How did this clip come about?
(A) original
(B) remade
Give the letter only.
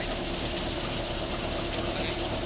A